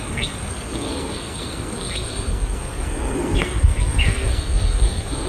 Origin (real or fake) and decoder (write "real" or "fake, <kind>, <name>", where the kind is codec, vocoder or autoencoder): fake, codec, SNAC